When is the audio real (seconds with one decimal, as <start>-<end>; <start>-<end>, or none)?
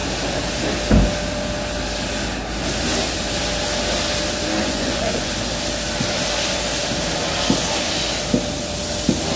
0.0-4.6; 5.3-9.4